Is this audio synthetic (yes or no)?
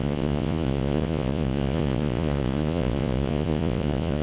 yes